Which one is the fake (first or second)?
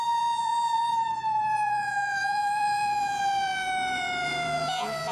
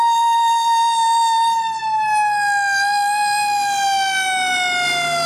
first